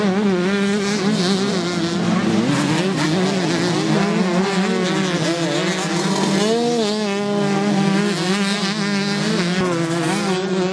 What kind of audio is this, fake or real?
real